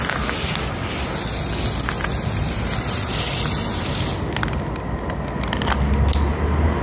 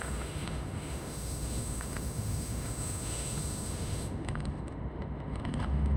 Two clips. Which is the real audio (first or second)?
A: first